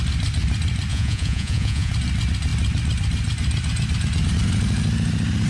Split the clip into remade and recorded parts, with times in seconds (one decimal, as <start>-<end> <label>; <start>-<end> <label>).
0.0-0.9 recorded; 0.9-1.9 remade; 1.9-5.5 recorded